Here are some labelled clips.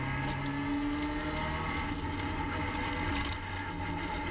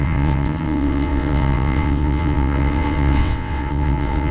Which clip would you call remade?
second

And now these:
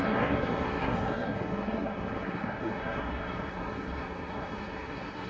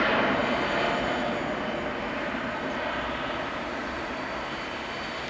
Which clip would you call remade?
first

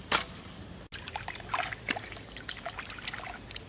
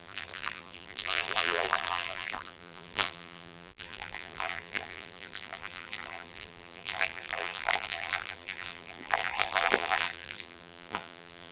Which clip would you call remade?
second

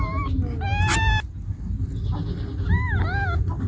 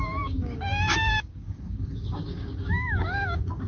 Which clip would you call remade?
second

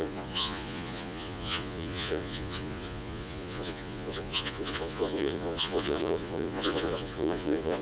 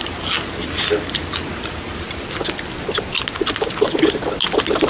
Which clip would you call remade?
first